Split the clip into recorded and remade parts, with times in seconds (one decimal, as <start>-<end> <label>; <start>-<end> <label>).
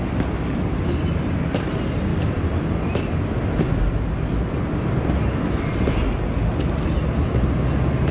0.0-8.1 recorded